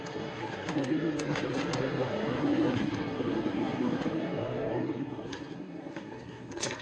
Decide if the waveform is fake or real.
fake